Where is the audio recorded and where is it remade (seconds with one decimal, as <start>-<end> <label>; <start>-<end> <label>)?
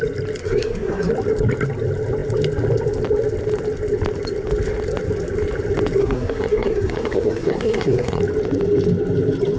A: 0.0-0.4 recorded; 0.4-1.1 remade; 1.1-6.0 recorded; 6.0-8.2 remade; 8.2-9.6 recorded